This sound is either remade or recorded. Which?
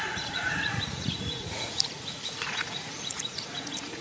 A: remade